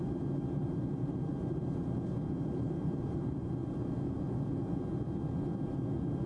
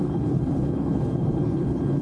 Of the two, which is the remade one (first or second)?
second